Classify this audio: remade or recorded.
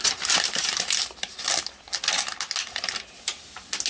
recorded